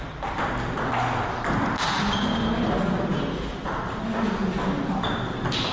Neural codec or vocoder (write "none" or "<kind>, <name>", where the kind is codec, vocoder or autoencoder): none